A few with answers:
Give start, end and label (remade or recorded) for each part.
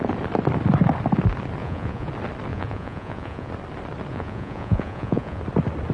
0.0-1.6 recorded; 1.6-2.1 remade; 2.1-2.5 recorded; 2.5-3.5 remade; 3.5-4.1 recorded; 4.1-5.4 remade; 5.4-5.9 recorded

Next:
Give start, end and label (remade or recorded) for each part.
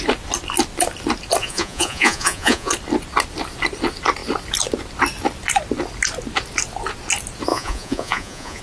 0.0-1.4 recorded; 1.4-2.7 remade; 2.7-7.5 recorded; 7.5-8.6 remade